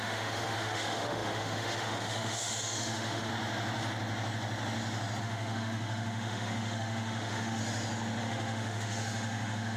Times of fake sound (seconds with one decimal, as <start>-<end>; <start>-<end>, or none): 0.0-3.3; 5.2-7.6; 8.2-9.8